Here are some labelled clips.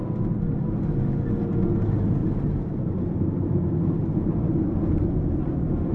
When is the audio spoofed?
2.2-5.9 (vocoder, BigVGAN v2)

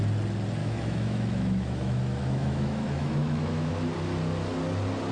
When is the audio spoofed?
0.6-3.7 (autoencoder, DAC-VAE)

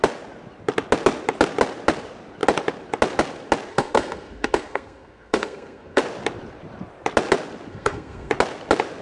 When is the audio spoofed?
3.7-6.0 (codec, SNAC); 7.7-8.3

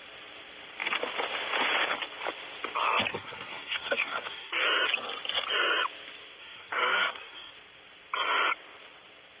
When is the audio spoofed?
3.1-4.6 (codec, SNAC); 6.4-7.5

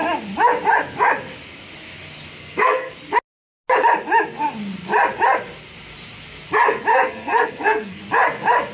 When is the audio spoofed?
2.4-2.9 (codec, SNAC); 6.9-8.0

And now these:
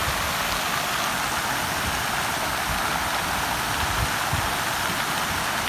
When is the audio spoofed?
none

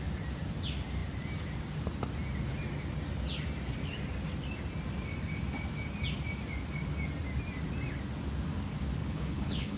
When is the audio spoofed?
9.0-9.8 (codec, HILCodec)

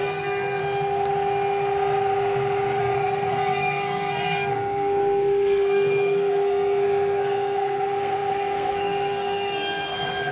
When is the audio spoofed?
0.0-0.6 (codec, SNAC); 2.8-10.3